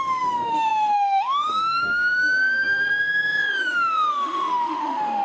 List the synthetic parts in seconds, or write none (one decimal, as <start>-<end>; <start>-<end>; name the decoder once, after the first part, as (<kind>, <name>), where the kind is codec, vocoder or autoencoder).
0.0-5.2 (autoencoder, DAC-VAE)